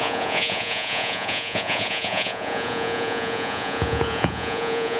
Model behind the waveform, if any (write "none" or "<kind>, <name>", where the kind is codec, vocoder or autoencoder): vocoder, Vocos